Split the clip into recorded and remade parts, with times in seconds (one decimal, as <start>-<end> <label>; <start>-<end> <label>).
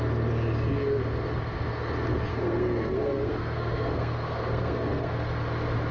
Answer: 0.0-2.3 recorded; 2.3-5.1 remade; 5.1-5.9 recorded